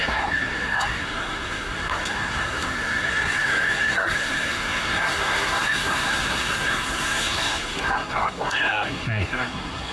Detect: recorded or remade remade